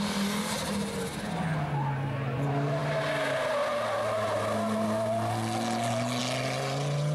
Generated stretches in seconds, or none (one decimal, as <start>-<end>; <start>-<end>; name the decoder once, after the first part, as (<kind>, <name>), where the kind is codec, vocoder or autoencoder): none